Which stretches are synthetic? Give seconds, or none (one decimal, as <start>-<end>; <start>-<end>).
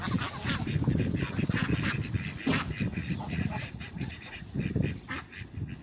2.9-4.6